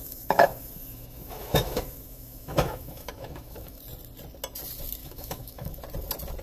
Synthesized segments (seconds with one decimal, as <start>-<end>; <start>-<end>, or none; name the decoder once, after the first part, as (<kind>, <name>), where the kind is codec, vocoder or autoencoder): 0.0-3.8 (autoencoder, DAC-VAE); 5.0-5.8